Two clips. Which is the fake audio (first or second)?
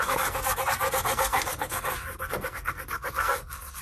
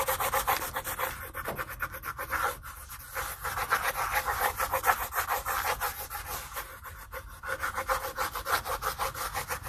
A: first